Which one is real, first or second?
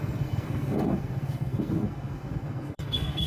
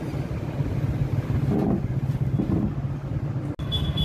second